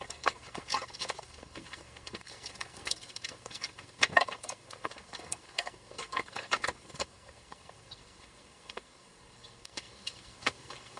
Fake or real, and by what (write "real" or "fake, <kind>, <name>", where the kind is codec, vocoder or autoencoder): fake, codec, SNAC